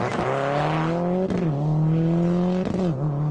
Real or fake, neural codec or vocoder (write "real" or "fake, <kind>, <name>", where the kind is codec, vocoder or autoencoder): real